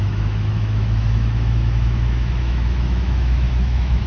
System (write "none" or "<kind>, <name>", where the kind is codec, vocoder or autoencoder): autoencoder, DAC-VAE